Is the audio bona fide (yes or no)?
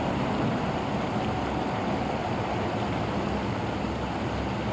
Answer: yes